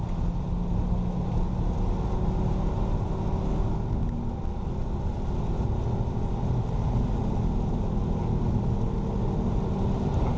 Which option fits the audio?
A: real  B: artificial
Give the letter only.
A